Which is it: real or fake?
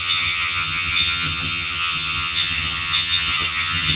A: fake